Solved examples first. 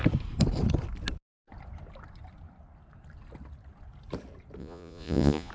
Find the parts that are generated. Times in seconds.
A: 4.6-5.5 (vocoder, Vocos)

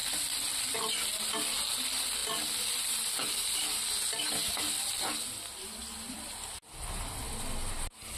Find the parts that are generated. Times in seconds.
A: 0.0-0.6 (vocoder, BigVGAN v2)

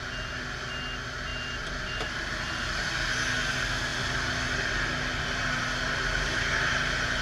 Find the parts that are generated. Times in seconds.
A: 1.3-2.1 (vocoder, BigVGAN v2); 3.9-4.7

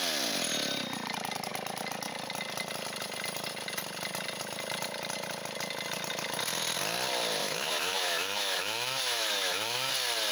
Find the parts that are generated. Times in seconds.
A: 7.4-9.9 (autoencoder, DAC-VAE)

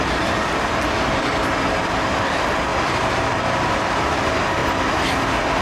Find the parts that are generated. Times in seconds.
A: none

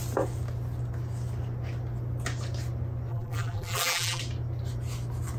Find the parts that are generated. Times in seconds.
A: 3.1-4.2 (vocoder, BigVGAN v2)

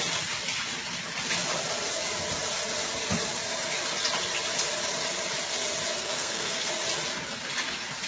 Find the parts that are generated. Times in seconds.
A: 5.9-6.7 (codec, SNAC)

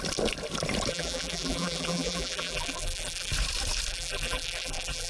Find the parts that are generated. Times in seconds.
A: 0.9-3.3 (vocoder, BigVGAN v2); 3.9-5.1